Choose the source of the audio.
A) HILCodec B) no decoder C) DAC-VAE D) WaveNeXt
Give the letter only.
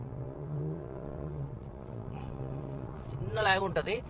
D